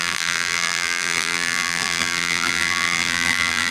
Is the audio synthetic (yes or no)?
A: yes